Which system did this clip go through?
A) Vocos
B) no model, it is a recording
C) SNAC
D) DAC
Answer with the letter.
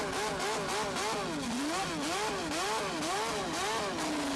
B